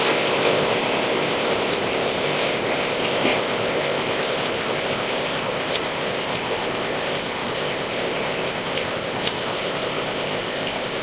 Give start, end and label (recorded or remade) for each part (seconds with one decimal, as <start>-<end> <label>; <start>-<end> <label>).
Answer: 0.0-11.0 remade